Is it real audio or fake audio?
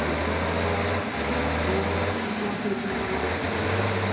real